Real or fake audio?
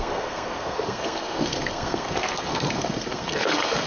fake